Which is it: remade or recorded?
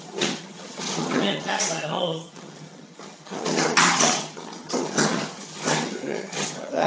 remade